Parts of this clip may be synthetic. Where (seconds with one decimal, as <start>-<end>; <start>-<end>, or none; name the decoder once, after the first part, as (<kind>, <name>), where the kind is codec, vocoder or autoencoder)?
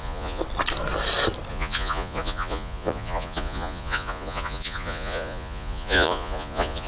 0.0-0.4 (vocoder, Vocos); 1.5-6.9